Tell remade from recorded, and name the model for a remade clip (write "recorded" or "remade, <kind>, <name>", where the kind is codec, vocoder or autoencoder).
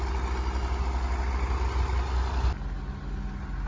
recorded